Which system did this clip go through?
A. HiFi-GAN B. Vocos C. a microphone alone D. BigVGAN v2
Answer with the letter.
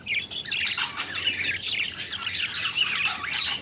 C